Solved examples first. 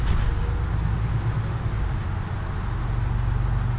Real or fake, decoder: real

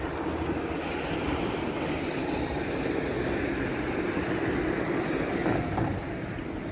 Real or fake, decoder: real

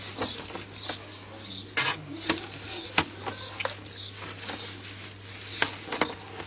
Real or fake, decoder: real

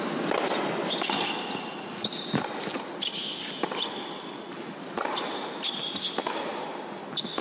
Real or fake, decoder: real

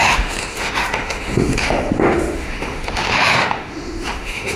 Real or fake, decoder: fake, autoencoder, DAC-VAE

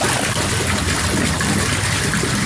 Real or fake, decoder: real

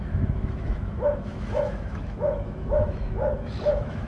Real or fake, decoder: fake, autoencoder, DAC-VAE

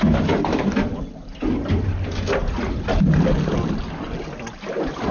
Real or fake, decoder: real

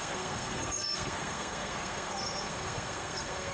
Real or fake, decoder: fake, codec, SNAC